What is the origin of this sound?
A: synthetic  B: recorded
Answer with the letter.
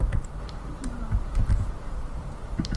A